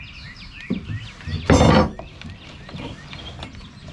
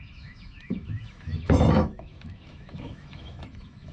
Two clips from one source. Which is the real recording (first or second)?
first